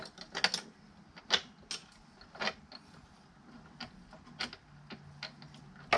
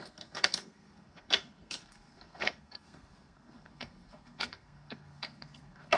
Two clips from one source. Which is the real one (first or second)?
first